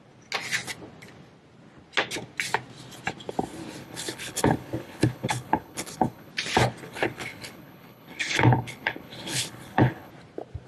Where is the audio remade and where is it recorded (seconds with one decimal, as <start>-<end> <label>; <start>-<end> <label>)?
0.0-3.8 recorded; 3.8-6.3 remade; 6.3-6.8 recorded; 6.8-10.1 remade; 10.1-10.7 recorded